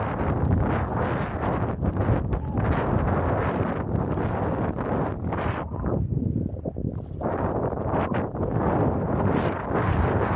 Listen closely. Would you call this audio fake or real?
real